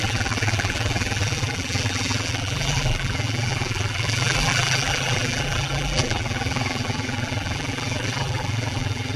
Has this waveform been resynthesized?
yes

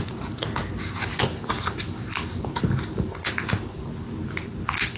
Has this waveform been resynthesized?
no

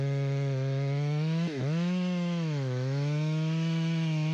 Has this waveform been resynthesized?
yes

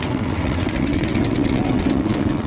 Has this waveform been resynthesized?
yes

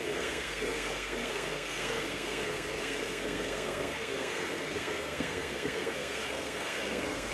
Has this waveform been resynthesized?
yes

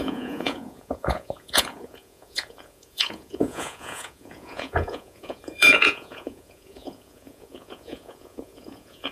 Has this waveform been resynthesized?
yes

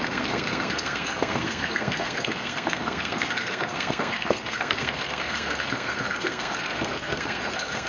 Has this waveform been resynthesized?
yes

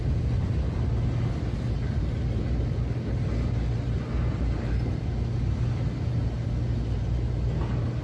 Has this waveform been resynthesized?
no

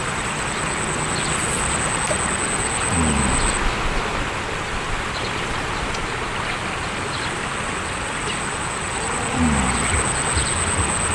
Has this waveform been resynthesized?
no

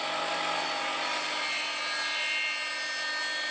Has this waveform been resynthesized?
no